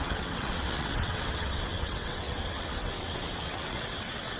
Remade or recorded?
remade